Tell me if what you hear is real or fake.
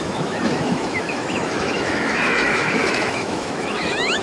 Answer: fake